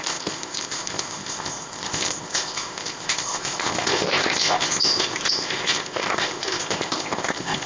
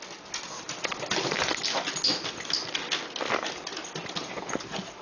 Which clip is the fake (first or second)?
first